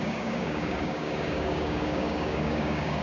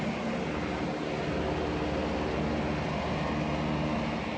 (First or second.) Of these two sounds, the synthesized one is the first